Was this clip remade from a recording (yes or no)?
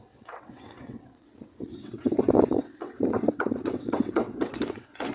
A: yes